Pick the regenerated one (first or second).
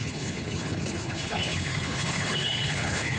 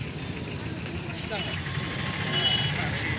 first